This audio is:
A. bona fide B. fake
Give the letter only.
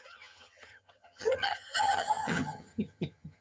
B